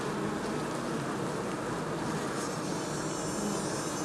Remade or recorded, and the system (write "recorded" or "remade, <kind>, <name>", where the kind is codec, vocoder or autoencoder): recorded